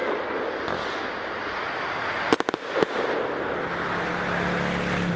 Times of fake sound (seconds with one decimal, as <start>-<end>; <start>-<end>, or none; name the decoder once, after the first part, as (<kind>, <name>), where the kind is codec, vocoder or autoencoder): none